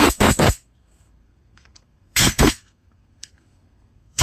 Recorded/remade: remade